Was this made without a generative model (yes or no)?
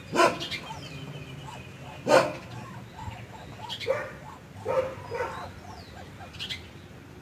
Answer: yes